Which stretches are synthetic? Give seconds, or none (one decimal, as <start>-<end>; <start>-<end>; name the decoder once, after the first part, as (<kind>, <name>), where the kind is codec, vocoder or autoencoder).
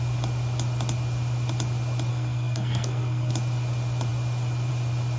2.1-3.3 (codec, SNAC)